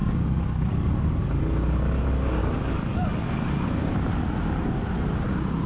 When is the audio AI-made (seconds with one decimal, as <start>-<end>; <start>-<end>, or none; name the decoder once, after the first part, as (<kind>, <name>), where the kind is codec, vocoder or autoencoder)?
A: 0.0-1.4 (codec, DAC); 2.4-3.3